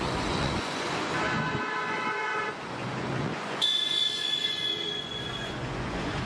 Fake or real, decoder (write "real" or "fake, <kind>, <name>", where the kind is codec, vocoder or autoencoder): fake, vocoder, Vocos